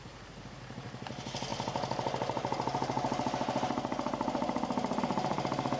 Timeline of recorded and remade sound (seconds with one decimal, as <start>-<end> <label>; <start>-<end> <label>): 0.0-5.8 recorded